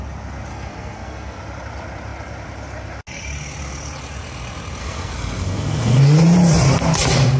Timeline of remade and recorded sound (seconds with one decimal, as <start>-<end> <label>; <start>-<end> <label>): 0.0-0.5 recorded; 0.5-1.4 remade; 1.4-4.8 recorded; 4.8-6.0 remade; 6.0-7.4 recorded